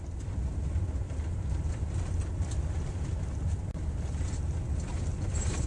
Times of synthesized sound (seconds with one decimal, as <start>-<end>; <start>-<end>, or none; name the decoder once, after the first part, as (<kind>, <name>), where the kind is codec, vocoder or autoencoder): 4.9-5.7 (vocoder, BigVGAN v2)